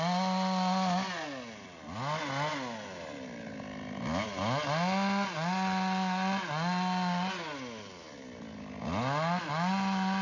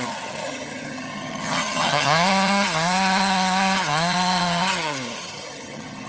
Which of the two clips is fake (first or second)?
second